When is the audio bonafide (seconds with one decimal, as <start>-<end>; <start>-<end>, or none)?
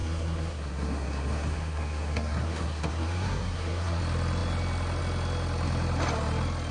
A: 4.0-6.7